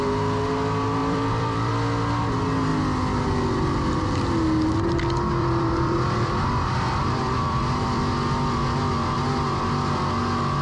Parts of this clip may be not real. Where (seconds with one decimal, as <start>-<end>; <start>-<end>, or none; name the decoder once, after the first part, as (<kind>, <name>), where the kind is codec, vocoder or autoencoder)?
1.0-1.7 (vocoder, BigVGAN v2); 5.4-8.1